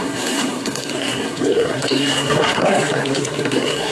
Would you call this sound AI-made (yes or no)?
yes